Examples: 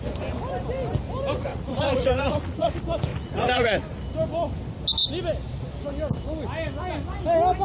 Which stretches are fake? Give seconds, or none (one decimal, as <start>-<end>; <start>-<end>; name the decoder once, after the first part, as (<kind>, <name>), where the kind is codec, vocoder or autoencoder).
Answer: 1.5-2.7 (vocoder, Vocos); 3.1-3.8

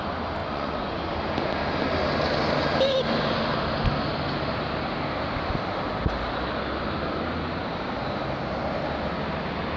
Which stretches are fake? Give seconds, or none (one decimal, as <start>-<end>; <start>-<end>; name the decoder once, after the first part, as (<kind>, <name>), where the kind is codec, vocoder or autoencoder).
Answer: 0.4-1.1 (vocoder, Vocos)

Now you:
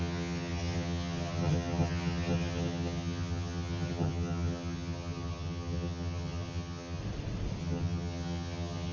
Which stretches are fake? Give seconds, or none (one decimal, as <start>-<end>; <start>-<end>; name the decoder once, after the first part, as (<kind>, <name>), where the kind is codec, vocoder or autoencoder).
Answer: 0.0-7.0 (vocoder, HiFi-GAN); 7.6-8.9

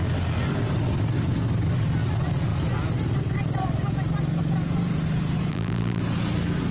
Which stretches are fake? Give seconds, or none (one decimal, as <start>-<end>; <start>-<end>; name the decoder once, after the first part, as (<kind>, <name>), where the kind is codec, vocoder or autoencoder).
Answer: 5.5-6.0 (vocoder, BigVGAN v2)